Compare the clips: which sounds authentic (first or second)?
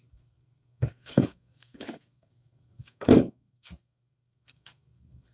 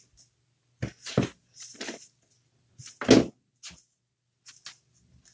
second